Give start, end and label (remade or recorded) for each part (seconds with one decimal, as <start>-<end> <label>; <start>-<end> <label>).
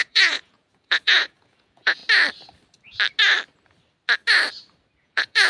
0.0-2.0 remade; 2.0-5.0 recorded; 5.0-5.5 remade